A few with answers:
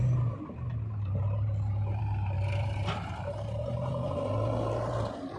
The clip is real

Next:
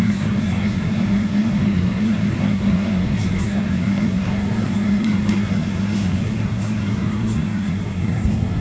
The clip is fake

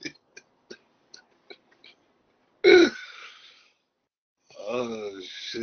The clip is real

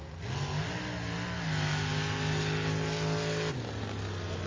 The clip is real